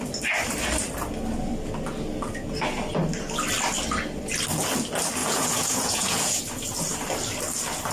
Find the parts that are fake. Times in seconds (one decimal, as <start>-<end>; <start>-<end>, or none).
5.2-6.4